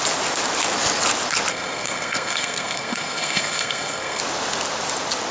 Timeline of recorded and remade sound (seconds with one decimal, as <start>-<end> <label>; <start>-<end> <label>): 0.0-1.5 recorded; 1.5-4.2 remade; 4.2-5.3 recorded